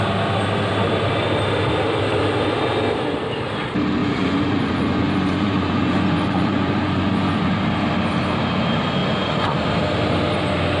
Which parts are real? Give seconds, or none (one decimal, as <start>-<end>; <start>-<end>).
0.0-4.0; 7.6-9.0; 9.6-10.8